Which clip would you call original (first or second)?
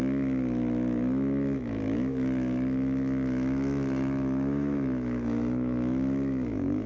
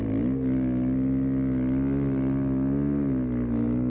second